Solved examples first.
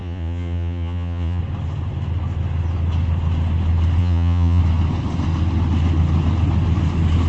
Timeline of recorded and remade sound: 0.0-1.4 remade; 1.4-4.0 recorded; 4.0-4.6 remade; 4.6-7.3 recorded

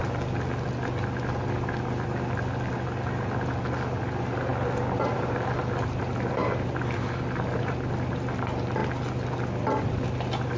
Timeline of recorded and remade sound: 0.0-4.0 recorded; 4.0-4.5 remade; 4.5-5.5 recorded; 5.5-10.6 remade

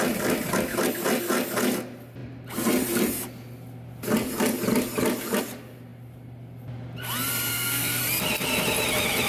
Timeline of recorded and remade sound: 0.0-7.5 recorded; 7.5-8.0 remade; 8.0-9.3 recorded

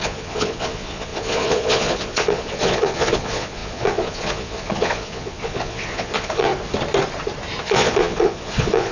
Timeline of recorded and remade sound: 0.0-6.5 remade; 6.5-7.6 recorded; 7.6-8.9 remade